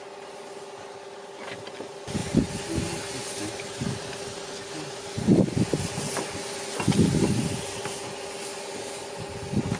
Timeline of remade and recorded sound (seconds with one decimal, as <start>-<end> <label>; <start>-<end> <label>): 0.0-9.8 recorded